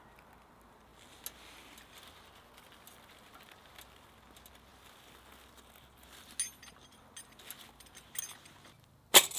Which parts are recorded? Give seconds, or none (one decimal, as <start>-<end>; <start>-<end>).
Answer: 0.0-9.4